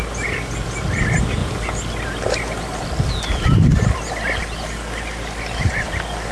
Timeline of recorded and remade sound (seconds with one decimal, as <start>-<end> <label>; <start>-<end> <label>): 0.0-6.3 recorded